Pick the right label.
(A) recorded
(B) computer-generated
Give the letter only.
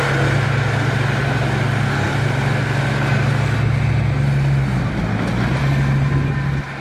A